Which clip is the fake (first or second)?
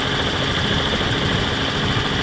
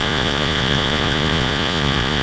second